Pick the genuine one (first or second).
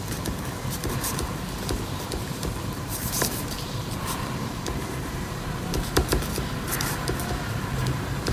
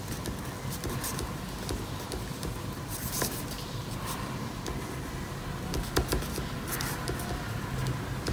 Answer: second